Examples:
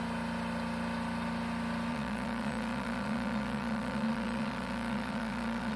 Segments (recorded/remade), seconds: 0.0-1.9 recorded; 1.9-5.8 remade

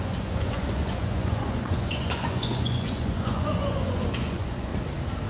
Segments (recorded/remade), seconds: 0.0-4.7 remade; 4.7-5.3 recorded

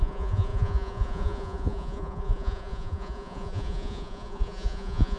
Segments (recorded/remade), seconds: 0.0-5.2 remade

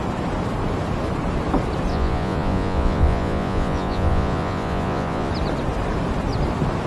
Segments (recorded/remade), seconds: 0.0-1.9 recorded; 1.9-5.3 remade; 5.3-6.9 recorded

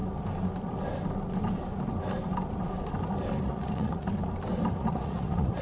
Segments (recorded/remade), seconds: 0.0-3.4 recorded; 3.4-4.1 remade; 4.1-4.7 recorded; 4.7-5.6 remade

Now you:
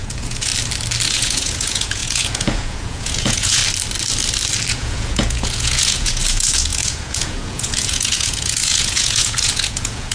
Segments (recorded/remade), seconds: 0.0-0.5 remade; 0.5-1.1 recorded; 1.1-3.6 remade; 3.6-4.7 recorded; 4.7-10.1 remade

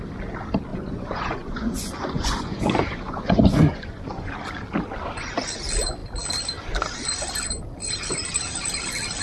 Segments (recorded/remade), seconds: 0.0-0.7 recorded; 0.7-4.3 remade; 4.3-9.2 recorded

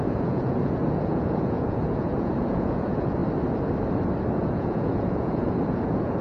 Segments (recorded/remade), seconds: 0.0-3.2 remade; 3.2-4.4 recorded; 4.4-6.2 remade